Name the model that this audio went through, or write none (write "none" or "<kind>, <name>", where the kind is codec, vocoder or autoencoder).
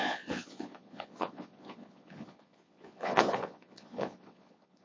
vocoder, Vocos